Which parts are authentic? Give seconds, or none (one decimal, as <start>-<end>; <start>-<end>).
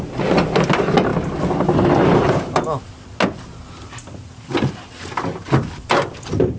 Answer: 0.0-6.6